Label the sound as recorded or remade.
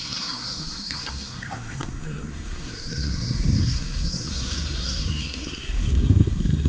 remade